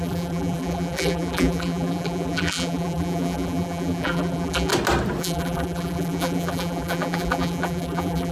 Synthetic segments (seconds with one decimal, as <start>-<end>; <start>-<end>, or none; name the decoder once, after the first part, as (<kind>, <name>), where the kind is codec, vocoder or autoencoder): 0.0-4.7 (vocoder, BigVGAN v2); 5.2-8.3